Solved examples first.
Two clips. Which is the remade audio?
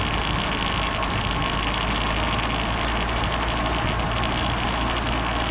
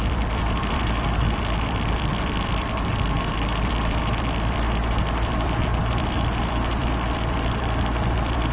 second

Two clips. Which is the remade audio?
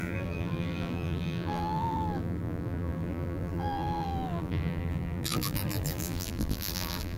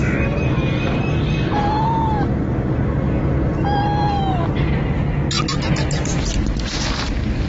first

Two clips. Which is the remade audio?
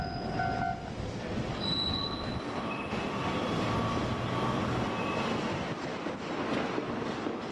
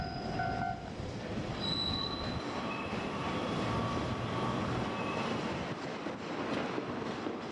second